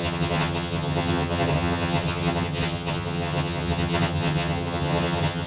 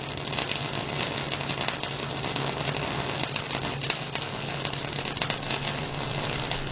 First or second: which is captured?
second